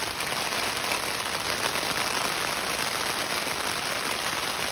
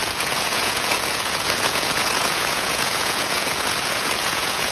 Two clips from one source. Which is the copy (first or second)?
second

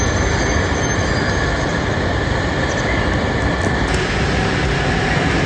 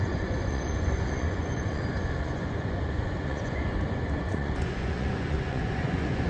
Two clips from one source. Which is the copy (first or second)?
second